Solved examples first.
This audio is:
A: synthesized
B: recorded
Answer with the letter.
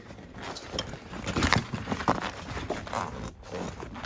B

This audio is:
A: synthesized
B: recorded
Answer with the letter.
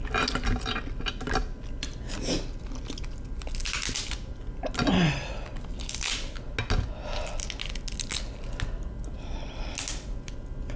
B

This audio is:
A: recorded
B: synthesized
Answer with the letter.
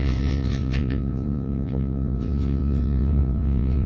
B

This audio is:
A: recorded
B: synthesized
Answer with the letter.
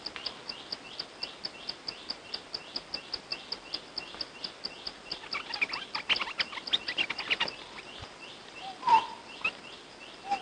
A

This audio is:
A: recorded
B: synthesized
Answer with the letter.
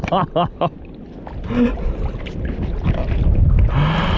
A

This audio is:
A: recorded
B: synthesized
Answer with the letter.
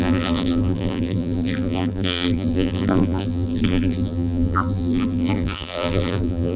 B